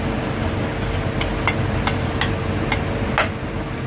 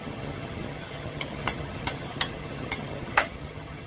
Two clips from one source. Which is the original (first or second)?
first